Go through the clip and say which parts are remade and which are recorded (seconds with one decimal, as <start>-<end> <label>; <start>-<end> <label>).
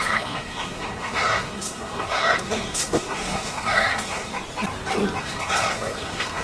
0.0-4.3 remade; 4.3-5.2 recorded; 5.2-6.4 remade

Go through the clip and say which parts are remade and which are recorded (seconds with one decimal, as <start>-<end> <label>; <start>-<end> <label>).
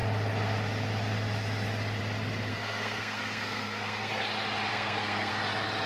0.0-2.5 recorded; 2.5-4.1 remade; 4.1-4.7 recorded; 4.7-5.3 remade; 5.3-5.9 recorded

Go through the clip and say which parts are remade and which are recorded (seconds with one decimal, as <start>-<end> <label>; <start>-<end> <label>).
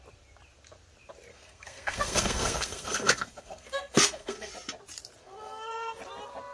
0.0-1.3 recorded; 1.3-4.5 remade; 4.5-5.2 recorded; 5.2-6.0 remade; 6.0-6.5 recorded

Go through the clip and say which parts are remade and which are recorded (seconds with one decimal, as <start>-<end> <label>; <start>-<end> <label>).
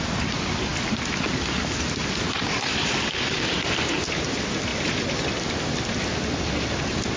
0.0-7.2 recorded